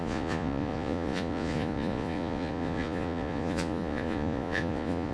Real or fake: fake